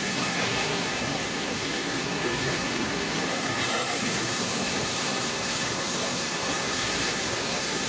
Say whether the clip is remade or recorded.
remade